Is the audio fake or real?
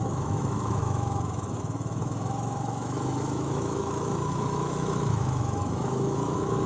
fake